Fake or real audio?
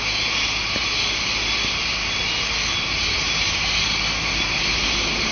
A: real